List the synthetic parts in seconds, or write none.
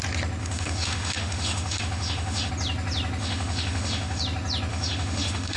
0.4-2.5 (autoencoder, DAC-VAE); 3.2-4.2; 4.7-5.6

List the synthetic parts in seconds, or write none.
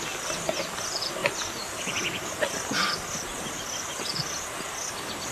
none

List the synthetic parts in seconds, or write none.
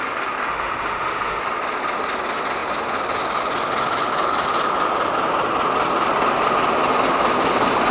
0.5-1.4 (autoencoder, DAC-VAE)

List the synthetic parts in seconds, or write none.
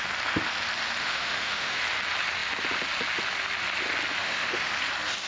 1.0-1.8 (autoencoder, DAC-VAE); 4.2-4.7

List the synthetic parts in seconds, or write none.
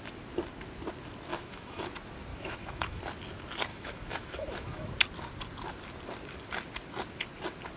1.3-1.9 (autoencoder, DAC-VAE); 2.3-3.0; 3.7-4.9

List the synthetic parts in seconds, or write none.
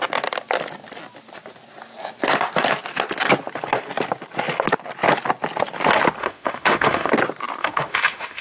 6.2-7.1 (autoencoder, DAC-VAE); 7.6-8.4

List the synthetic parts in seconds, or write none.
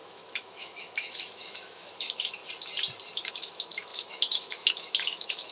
0.0-2.4 (autoencoder, DAC-VAE); 3.3-5.5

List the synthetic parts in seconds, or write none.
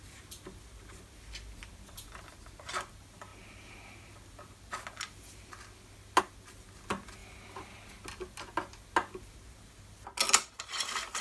none